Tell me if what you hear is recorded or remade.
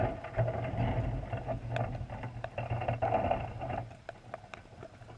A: recorded